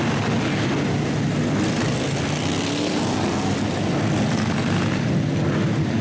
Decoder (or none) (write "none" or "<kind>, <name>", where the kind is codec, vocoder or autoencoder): none